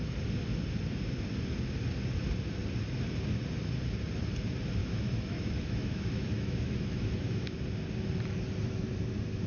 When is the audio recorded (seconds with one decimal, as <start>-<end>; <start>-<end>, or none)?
0.0-4.8; 7.6-9.5